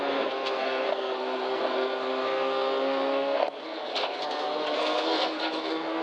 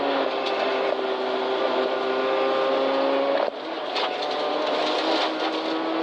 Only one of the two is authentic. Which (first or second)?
second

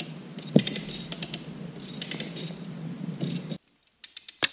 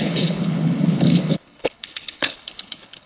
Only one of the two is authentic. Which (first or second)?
first